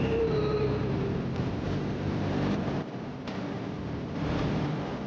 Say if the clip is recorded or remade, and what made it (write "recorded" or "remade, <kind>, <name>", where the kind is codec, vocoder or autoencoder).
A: remade, vocoder, BigVGAN v2